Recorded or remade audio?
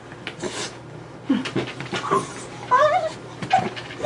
recorded